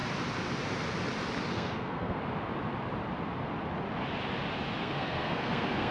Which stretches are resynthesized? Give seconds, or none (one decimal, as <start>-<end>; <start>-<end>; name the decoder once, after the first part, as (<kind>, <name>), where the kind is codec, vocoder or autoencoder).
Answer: 1.5-2.2 (codec, SNAC); 4.8-5.9